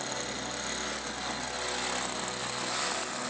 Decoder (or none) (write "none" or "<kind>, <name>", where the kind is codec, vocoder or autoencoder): none